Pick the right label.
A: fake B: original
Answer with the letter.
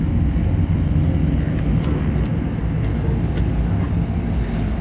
B